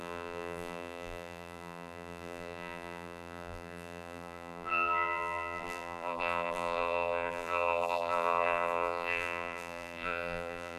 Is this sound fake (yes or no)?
yes